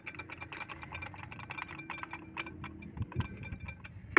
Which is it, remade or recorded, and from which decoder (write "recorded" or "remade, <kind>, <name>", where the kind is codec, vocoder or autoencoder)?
recorded